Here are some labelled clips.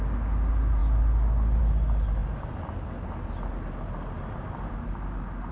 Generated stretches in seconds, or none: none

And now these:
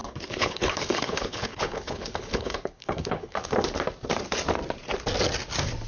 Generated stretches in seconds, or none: 0.0-3.5